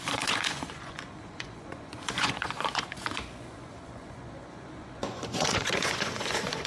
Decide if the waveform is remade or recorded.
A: remade